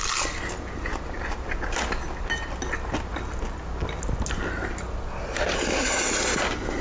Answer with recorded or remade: recorded